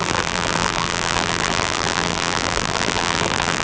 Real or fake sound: fake